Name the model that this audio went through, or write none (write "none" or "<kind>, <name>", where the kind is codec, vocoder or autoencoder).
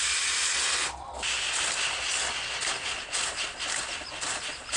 none